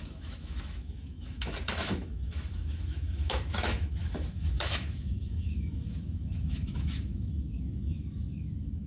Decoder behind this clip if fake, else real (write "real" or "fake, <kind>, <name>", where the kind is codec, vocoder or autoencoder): fake, autoencoder, DAC-VAE